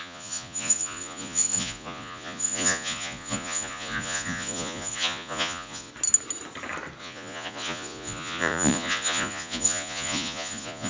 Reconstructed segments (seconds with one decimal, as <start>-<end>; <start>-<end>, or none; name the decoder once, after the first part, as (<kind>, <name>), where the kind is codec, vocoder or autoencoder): 0.0-5.9 (vocoder, Vocos); 7.0-10.9